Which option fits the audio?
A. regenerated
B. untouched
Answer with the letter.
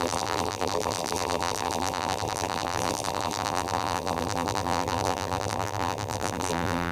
A